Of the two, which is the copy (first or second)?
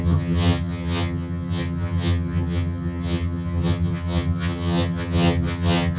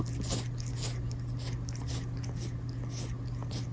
first